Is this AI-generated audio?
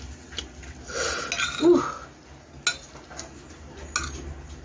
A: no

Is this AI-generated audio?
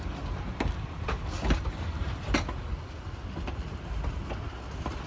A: no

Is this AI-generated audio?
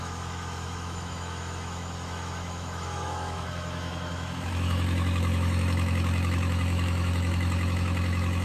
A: yes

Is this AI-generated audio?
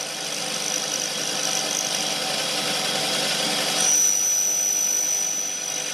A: no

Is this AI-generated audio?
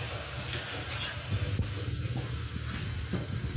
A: no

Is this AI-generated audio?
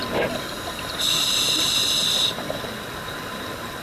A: no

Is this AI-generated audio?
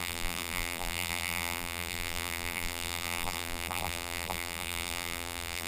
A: yes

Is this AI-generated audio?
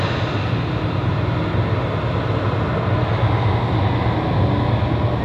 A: no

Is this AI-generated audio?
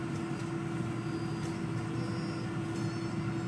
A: no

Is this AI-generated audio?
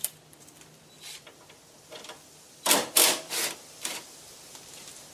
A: yes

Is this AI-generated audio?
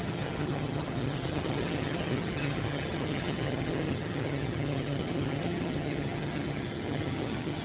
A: yes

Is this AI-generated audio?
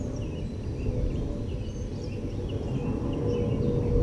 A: no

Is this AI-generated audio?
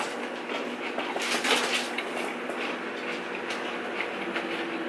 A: no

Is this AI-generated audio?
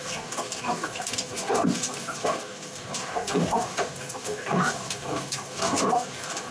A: yes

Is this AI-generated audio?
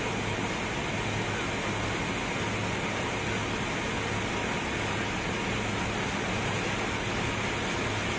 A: no